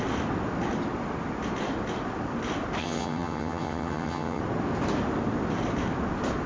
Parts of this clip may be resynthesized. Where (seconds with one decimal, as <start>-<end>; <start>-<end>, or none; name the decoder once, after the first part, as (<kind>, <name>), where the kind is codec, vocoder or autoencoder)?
2.8-4.4 (vocoder, HiFi-GAN)